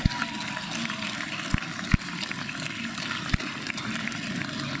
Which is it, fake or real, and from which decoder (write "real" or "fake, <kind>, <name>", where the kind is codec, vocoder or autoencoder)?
real